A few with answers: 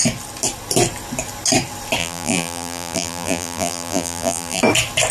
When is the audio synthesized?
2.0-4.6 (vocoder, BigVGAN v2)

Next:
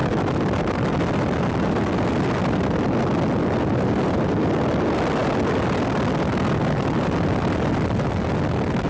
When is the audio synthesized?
none

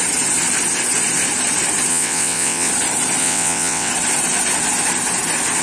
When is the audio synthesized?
1.9-2.7 (vocoder, WaveNeXt); 3.2-3.9

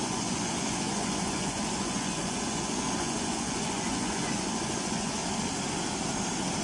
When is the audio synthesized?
0.0-5.2 (vocoder, Vocos)

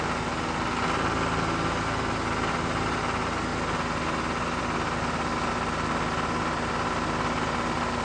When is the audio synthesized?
none

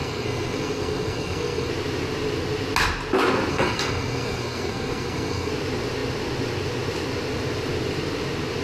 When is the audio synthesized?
0.0-1.7 (codec, SNAC); 3.5-5.5

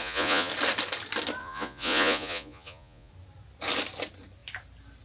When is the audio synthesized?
0.0-0.5 (vocoder, Vocos); 1.4-3.1